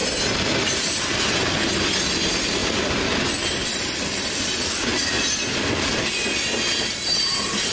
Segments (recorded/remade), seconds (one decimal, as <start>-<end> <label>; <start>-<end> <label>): 0.0-7.7 recorded